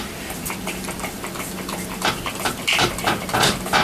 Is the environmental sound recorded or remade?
remade